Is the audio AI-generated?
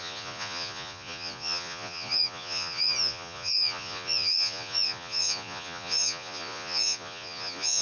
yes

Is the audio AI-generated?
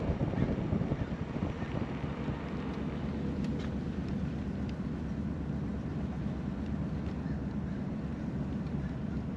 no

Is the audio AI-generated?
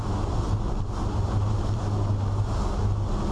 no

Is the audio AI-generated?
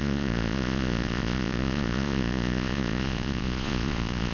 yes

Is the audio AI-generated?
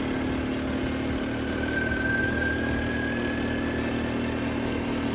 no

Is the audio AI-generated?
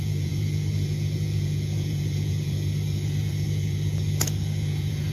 yes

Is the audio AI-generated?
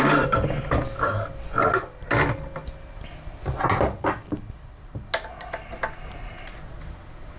no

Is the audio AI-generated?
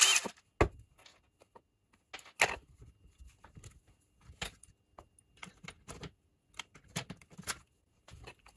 no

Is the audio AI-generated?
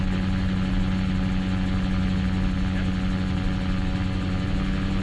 no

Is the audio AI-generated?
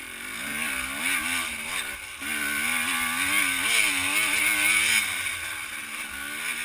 no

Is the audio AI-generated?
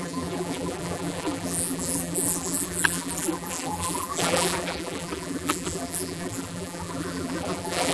yes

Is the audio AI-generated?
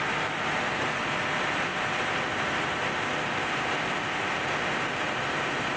no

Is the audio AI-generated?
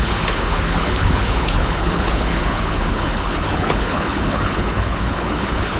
yes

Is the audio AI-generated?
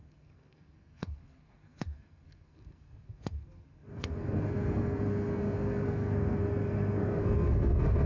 yes